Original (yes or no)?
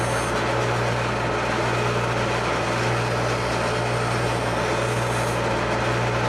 yes